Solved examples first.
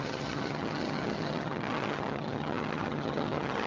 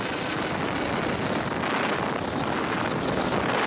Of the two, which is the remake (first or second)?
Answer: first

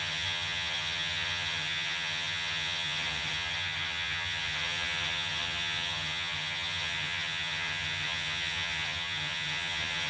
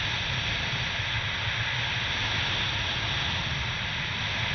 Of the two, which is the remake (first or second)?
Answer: first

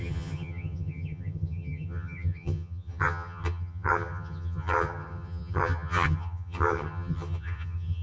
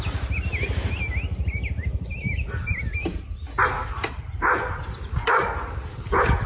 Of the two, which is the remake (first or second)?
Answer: first